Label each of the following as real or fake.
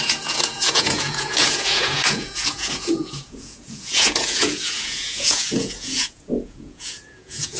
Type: fake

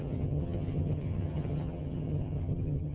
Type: fake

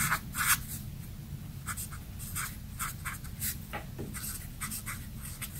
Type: real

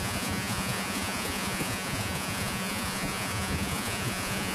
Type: fake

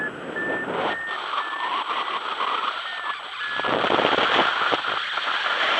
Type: real